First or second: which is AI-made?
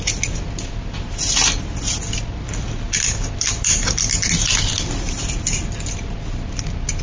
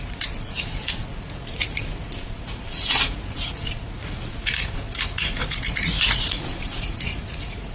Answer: second